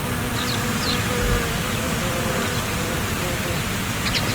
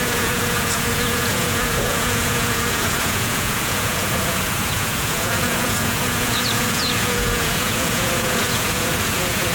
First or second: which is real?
first